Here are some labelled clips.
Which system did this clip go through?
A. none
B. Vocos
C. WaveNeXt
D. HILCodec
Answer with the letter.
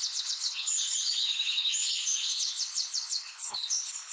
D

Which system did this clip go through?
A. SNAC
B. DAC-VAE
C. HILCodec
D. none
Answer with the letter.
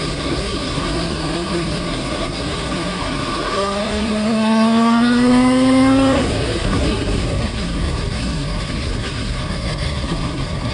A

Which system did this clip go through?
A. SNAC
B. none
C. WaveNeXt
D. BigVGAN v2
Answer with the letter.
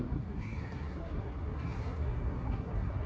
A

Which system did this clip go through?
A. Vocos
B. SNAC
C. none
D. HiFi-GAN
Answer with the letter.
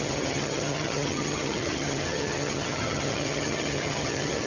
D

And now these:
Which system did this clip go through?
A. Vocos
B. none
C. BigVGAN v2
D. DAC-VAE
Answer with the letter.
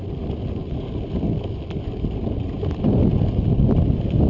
B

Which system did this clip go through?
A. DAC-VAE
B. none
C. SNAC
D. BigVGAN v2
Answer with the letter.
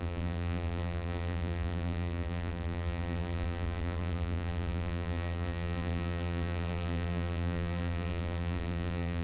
D